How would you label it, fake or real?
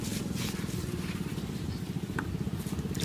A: real